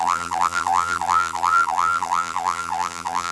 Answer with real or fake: fake